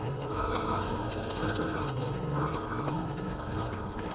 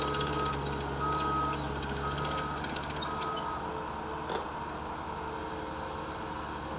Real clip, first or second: second